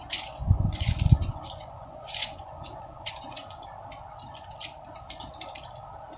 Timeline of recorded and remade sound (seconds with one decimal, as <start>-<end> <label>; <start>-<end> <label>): 0.0-3.7 remade; 3.7-6.2 recorded